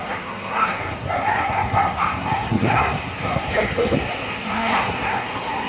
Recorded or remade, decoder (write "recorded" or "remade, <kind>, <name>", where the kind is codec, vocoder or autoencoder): remade, codec, SNAC